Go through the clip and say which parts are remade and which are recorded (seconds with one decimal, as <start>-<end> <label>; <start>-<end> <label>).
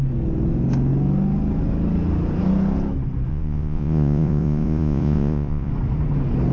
0.0-3.3 recorded; 3.3-5.7 remade; 5.7-6.5 recorded